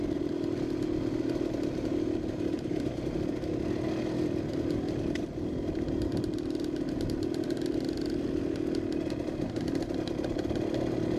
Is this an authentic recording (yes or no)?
yes